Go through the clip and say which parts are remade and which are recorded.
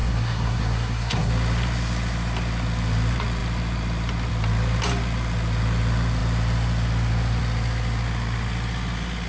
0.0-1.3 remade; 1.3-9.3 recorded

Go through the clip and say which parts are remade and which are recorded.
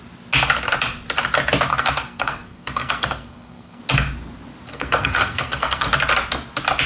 0.0-1.7 recorded; 1.7-3.8 remade; 3.8-4.7 recorded; 4.7-5.9 remade; 5.9-6.9 recorded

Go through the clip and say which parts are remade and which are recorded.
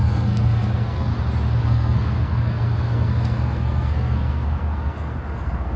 0.0-1.1 remade; 1.1-1.6 recorded; 1.6-5.8 remade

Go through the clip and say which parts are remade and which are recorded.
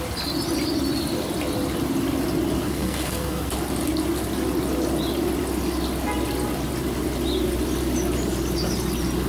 0.0-2.6 recorded; 2.6-3.5 remade; 3.5-9.3 recorded